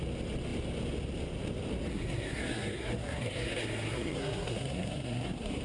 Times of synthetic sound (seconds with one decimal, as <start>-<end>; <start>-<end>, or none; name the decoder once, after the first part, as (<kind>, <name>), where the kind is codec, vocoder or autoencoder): 1.9-5.6 (codec, SNAC)